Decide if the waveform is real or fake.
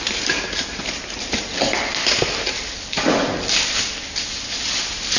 real